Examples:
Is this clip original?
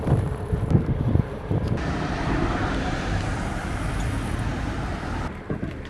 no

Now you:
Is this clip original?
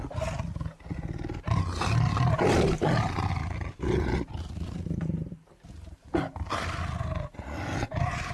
yes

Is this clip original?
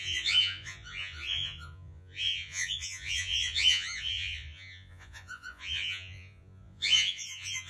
no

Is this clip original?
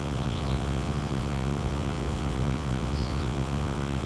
no